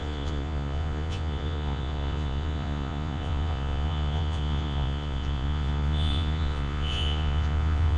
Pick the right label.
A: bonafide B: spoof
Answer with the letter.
B